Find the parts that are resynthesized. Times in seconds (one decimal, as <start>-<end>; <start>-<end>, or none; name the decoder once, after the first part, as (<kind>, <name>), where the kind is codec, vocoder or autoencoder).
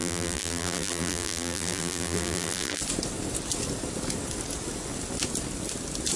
0.0-2.8 (vocoder, BigVGAN v2)